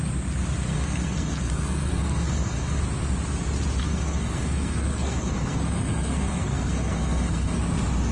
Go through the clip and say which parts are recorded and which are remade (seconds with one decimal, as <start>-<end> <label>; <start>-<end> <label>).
0.0-0.7 recorded; 0.7-2.8 remade; 2.8-3.8 recorded; 3.8-7.6 remade; 7.6-8.1 recorded